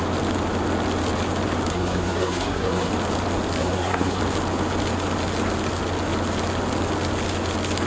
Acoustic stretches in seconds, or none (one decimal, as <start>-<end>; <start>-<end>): 0.0-1.7; 2.9-3.6; 4.2-7.9